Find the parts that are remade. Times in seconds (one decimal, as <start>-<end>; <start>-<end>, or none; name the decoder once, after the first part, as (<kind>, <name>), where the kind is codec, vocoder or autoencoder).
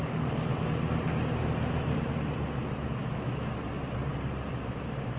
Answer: 3.0-3.5 (autoencoder, DAC-VAE)